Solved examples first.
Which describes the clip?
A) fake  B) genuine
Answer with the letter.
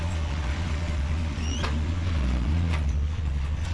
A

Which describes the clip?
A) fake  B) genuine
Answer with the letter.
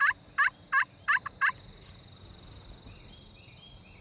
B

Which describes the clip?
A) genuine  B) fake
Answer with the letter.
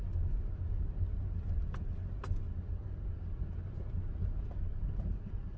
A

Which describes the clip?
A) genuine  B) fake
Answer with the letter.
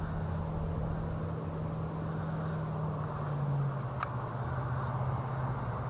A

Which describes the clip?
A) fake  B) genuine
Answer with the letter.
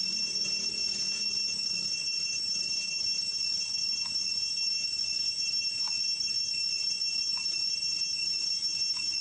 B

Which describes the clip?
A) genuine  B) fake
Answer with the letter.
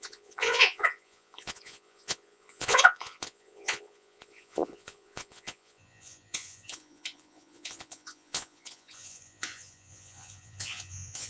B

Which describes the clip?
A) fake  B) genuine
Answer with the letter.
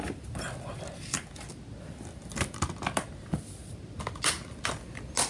B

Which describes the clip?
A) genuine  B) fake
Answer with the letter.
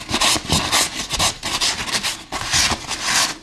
A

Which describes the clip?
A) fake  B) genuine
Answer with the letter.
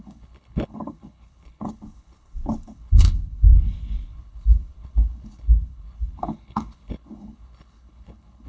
A